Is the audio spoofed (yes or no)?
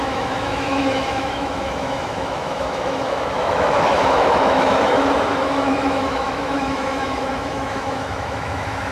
yes